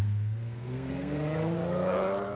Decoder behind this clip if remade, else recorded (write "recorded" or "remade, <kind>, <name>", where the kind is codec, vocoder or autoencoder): remade, codec, SNAC